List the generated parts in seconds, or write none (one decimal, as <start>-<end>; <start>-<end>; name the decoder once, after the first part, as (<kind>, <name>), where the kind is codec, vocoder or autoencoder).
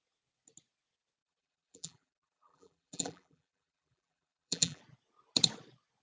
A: 1.2-4.8 (vocoder, BigVGAN v2)